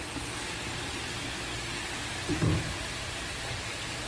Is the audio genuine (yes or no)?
yes